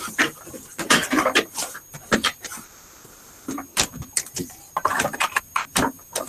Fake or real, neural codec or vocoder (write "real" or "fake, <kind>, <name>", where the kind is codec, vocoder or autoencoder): fake, vocoder, BigVGAN v2